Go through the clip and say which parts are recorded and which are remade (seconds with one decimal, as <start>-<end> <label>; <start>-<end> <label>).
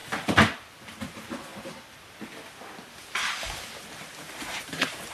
0.0-1.0 recorded; 1.0-1.5 remade; 1.5-4.6 recorded; 4.6-5.1 remade